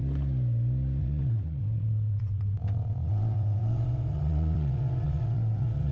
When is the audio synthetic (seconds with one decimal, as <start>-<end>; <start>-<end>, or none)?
1.0-5.9